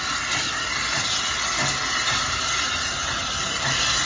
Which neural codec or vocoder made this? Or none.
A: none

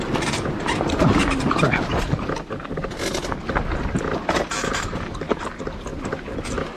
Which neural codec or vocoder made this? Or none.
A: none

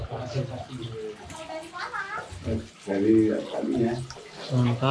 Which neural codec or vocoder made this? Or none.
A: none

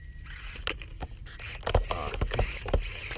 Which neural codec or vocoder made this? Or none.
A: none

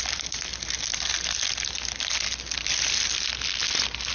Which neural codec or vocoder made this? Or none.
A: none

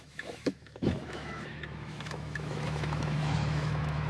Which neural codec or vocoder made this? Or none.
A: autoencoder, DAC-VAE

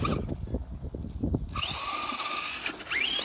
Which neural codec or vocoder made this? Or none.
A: none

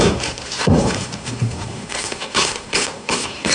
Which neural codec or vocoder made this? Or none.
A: codec, SNAC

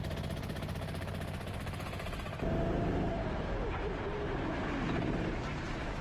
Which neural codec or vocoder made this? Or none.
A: none